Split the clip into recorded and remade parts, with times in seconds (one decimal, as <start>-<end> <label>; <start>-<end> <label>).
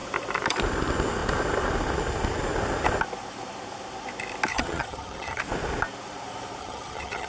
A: 0.0-4.5 recorded; 4.5-5.4 remade; 5.4-6.6 recorded; 6.6-7.3 remade